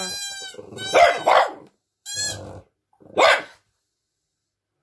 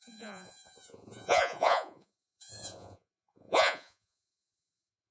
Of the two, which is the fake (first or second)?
second